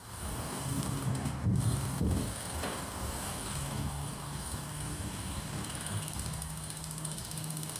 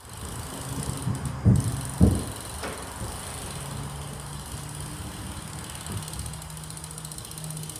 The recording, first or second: second